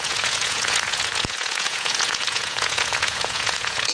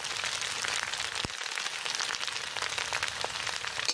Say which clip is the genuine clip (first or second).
second